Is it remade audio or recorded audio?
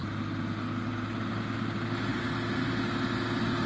recorded